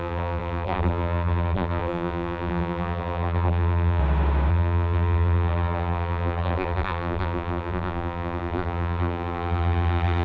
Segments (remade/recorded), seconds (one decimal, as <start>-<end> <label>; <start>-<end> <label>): 0.0-4.0 remade; 4.0-4.5 recorded; 4.5-10.2 remade